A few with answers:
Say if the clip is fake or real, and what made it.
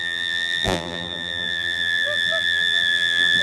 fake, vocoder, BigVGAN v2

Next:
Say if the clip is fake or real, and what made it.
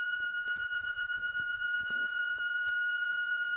fake, vocoder, Vocos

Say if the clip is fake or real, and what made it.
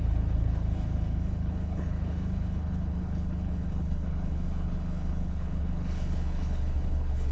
fake, codec, HILCodec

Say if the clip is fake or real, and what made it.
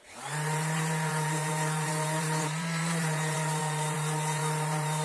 fake, vocoder, BigVGAN v2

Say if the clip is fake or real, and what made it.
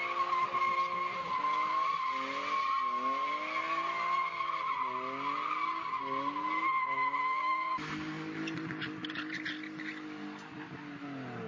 real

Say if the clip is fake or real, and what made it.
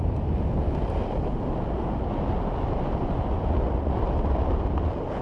real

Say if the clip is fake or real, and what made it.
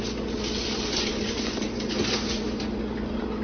real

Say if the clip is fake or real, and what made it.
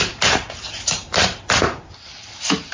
fake, vocoder, BigVGAN v2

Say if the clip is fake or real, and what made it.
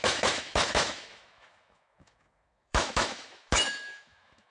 fake, autoencoder, DAC-VAE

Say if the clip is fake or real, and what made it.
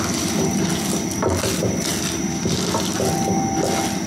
real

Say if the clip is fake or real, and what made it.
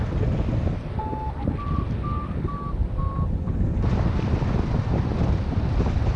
real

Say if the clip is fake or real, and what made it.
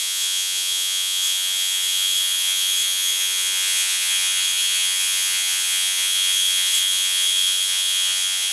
fake, vocoder, Vocos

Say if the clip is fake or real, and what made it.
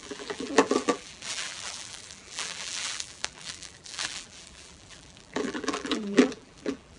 fake, vocoder, BigVGAN v2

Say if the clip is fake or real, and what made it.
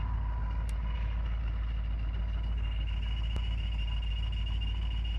real